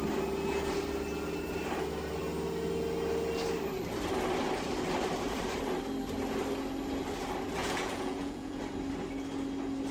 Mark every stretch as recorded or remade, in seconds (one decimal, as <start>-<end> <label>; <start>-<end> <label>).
0.0-7.6 recorded; 7.6-8.6 remade; 8.6-9.9 recorded